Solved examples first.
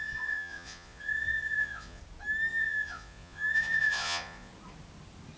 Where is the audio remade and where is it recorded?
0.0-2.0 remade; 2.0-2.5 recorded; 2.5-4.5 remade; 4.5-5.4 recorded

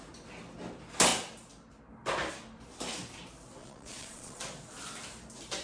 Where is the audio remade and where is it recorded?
0.0-3.6 recorded; 3.6-4.4 remade; 4.4-5.6 recorded

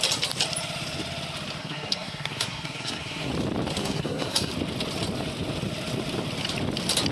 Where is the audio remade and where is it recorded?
0.0-1.6 recorded; 1.6-3.3 remade; 3.3-3.8 recorded; 3.8-4.5 remade; 4.5-7.1 recorded

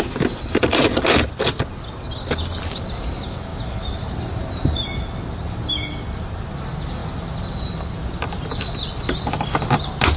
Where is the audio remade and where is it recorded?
0.0-10.2 recorded

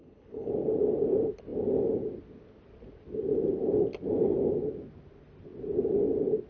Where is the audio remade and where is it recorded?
0.0-0.5 remade; 0.5-6.5 recorded

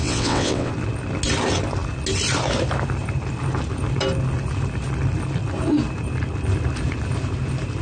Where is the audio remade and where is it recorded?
0.0-0.7 remade; 0.7-7.8 recorded